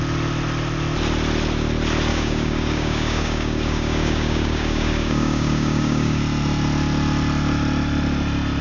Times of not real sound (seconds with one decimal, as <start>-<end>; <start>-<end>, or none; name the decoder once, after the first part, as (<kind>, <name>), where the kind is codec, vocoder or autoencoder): 2.1-6.2 (codec, DAC)